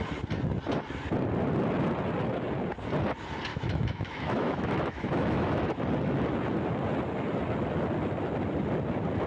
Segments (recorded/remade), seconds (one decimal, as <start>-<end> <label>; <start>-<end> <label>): 0.0-3.5 recorded; 3.5-5.8 remade; 5.8-9.3 recorded